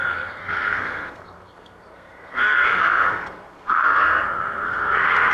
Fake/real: fake